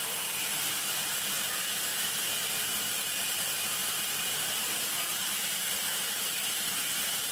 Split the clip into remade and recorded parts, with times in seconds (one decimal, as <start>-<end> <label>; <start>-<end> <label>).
0.0-1.9 remade; 1.9-2.6 recorded; 2.6-7.3 remade